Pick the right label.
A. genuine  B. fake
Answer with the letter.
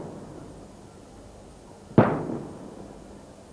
A